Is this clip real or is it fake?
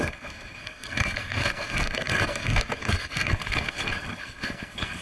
fake